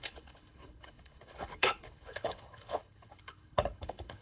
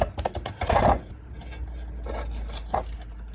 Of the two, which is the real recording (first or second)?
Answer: second